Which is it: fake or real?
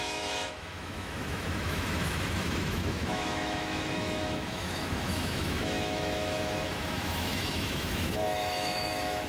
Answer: fake